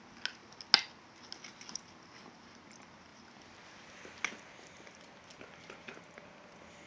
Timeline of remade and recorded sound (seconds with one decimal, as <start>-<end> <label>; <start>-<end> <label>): 0.0-6.9 recorded